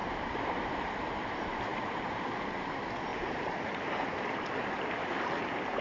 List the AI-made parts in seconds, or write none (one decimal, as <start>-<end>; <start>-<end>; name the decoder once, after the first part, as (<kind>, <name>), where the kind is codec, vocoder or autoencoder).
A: 3.1-5.8 (vocoder, BigVGAN v2)